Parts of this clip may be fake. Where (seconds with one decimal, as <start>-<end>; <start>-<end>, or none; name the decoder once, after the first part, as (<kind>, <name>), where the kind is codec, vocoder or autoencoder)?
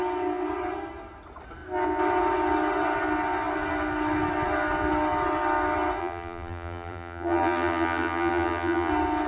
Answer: 6.0-8.9 (vocoder, BigVGAN v2)